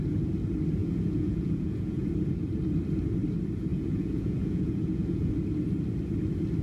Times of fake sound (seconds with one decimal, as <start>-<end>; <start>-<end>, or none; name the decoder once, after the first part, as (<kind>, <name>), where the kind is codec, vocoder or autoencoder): 0.8-2.1 (vocoder, Vocos); 3.7-5.3